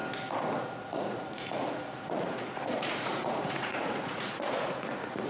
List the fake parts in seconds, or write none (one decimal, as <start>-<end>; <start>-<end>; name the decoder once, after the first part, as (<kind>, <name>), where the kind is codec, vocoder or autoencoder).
0.6-5.3 (vocoder, Vocos)